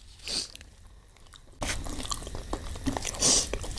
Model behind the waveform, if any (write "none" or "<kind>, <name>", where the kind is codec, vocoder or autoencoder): none